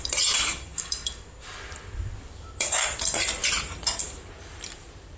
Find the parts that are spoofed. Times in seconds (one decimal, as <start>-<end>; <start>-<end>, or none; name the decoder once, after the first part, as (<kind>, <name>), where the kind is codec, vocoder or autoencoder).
0.0-3.4 (vocoder, BigVGAN v2); 4.0-5.2